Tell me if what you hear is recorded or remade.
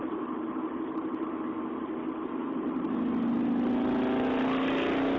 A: recorded